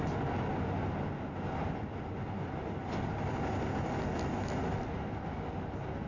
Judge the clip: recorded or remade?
recorded